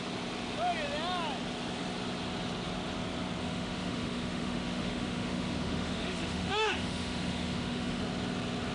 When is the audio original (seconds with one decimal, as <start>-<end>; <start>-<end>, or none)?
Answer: 0.0-3.4; 8.0-8.7